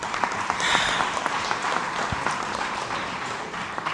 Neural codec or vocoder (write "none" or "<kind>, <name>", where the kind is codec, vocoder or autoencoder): vocoder, BigVGAN v2